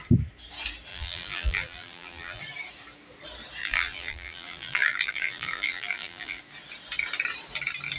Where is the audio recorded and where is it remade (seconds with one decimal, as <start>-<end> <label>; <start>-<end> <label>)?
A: 0.0-0.9 recorded; 0.9-2.4 remade; 2.4-3.6 recorded; 3.6-6.4 remade; 6.4-8.0 recorded